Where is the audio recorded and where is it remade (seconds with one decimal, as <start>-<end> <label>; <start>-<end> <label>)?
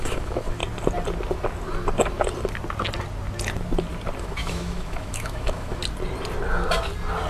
0.0-0.6 remade; 0.6-4.2 recorded; 4.2-5.8 remade; 5.8-7.3 recorded